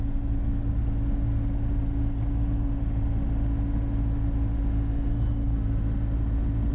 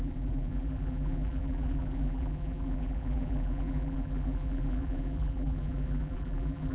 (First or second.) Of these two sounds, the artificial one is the second